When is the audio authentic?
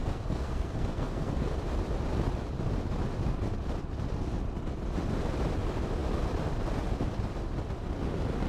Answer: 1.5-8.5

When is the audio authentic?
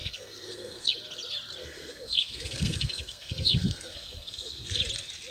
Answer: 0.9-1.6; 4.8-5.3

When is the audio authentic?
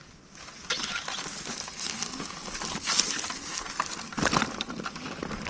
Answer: 0.0-5.5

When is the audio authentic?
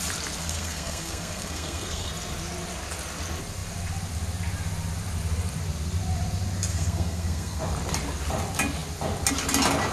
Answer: 0.0-0.4; 2.1-6.7; 7.6-9.9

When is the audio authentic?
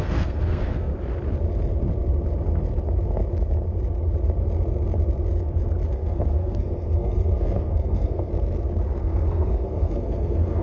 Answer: 0.9-5.9; 8.3-9.0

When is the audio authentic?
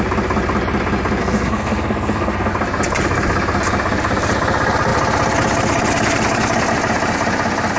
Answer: 0.0-1.2; 2.5-7.8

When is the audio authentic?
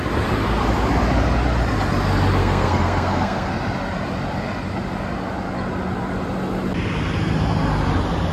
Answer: 0.0-2.4; 3.5-8.3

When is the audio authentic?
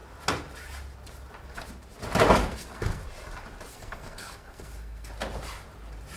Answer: 0.0-2.4; 3.0-3.7; 5.1-6.2